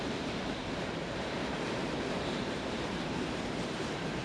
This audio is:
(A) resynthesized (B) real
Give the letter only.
A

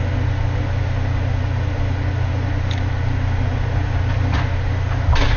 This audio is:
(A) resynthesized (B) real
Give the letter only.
B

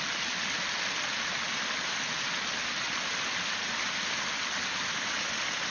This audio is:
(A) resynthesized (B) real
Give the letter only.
B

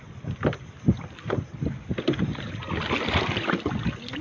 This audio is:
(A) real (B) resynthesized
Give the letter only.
A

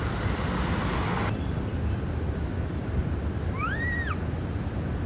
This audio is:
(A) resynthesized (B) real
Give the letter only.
B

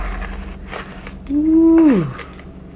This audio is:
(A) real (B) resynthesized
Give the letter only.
A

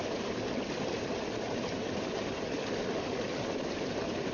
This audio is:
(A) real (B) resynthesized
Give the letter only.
A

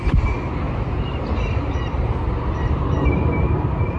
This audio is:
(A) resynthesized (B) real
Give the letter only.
A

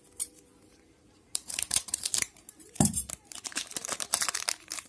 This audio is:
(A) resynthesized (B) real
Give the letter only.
A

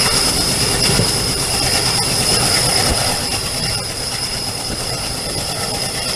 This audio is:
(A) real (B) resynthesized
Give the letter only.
B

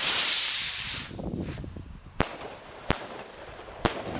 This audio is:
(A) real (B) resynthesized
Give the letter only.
B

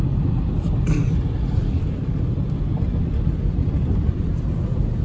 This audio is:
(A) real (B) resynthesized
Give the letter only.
B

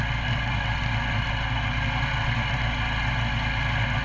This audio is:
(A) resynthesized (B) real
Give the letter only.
B